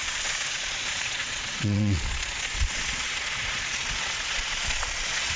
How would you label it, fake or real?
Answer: fake